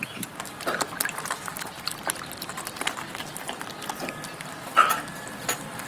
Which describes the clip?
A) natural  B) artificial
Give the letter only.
A